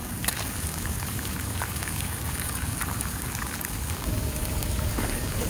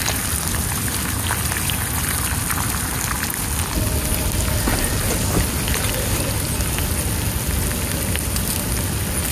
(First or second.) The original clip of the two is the second